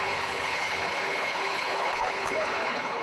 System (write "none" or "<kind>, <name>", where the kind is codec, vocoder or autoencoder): codec, HILCodec